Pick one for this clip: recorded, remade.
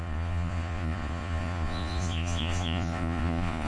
remade